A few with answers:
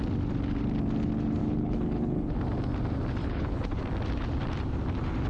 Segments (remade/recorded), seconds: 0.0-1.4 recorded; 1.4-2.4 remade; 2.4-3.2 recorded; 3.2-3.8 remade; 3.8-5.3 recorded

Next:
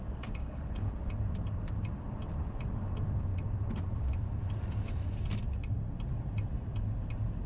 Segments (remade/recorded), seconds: 0.0-0.4 recorded; 0.4-0.9 remade; 0.9-7.5 recorded